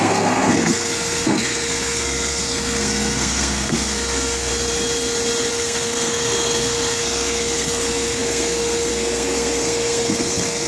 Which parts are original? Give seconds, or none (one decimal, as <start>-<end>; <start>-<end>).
4.5-5.5